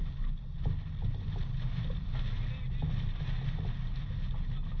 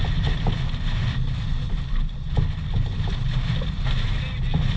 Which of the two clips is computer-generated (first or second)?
second